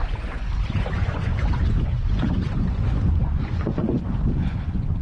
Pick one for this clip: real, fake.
fake